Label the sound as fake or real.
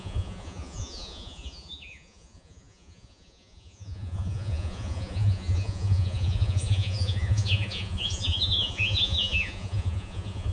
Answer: fake